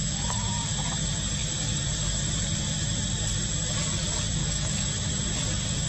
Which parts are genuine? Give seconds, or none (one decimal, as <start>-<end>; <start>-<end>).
0.5-4.4; 4.9-5.9